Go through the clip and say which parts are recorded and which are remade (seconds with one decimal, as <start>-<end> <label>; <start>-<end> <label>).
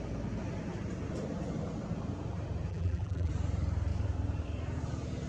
0.0-2.7 recorded; 2.7-3.3 remade; 3.3-5.3 recorded